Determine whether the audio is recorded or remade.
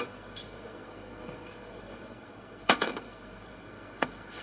remade